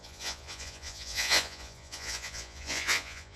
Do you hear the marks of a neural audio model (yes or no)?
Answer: yes